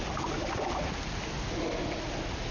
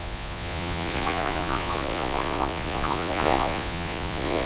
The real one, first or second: first